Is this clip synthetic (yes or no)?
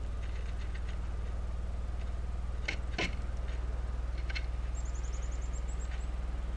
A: no